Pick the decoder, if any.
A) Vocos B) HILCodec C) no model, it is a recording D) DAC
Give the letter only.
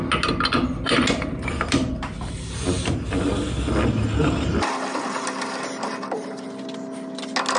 C